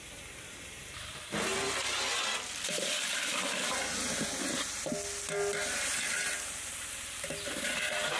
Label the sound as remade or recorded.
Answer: recorded